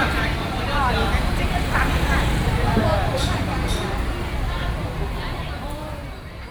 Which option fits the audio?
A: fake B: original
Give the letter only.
A